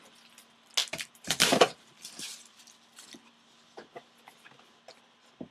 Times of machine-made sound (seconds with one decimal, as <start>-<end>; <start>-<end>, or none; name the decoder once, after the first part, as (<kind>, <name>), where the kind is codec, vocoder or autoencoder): 0.8-2.6 (vocoder, BigVGAN v2)